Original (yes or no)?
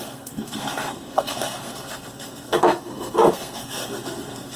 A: no